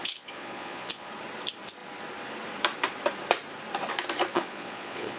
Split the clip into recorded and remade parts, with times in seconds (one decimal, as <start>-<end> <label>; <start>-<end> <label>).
0.0-1.1 remade; 1.1-4.3 recorded; 4.3-5.2 remade